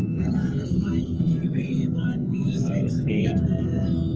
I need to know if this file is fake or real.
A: fake